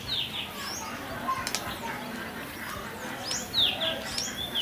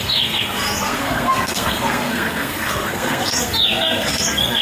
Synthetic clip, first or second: second